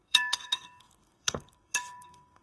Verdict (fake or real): fake